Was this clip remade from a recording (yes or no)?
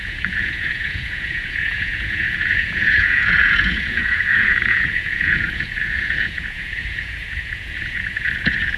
yes